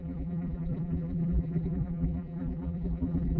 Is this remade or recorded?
remade